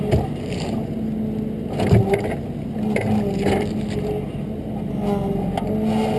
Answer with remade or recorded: recorded